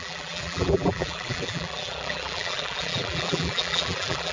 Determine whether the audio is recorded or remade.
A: remade